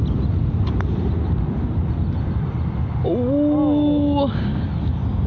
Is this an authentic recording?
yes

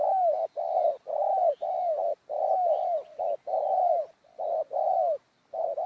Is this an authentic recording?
yes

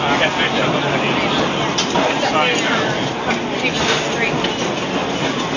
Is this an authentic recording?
yes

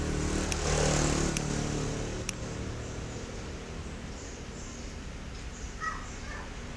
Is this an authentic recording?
yes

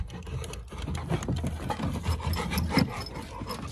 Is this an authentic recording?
yes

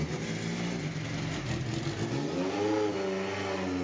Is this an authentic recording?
yes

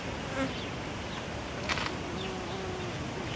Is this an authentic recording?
yes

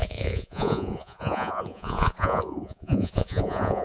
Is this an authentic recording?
no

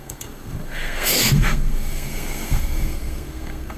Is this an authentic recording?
no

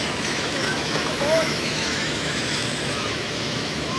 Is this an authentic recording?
no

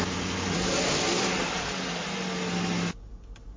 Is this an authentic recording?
yes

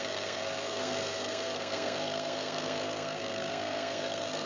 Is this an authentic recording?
no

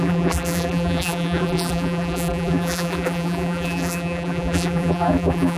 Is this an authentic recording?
no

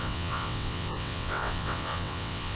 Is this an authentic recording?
no